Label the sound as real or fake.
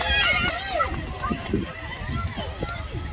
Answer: real